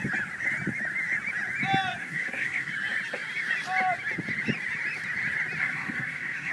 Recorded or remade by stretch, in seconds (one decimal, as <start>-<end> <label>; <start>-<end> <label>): 0.0-2.0 recorded; 2.0-2.7 remade; 2.7-5.6 recorded; 5.6-6.5 remade

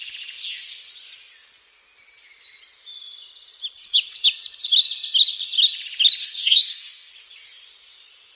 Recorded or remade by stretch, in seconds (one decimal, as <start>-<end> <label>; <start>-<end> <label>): 0.0-6.2 recorded; 6.2-7.1 remade; 7.1-8.4 recorded

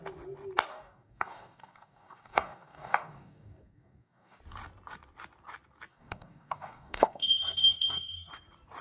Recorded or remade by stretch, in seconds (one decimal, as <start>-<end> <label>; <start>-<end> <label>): 0.0-0.7 recorded; 0.7-4.4 remade; 4.4-5.9 recorded; 5.9-8.3 remade; 8.3-8.8 recorded

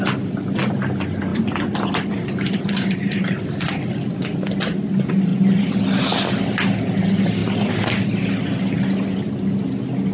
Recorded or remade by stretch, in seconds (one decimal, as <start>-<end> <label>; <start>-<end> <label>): 0.0-1.3 recorded; 1.3-3.7 remade; 3.7-10.1 recorded